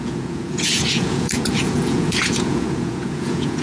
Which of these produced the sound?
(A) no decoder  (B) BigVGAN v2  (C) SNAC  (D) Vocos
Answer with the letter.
D